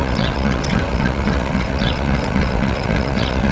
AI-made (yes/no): yes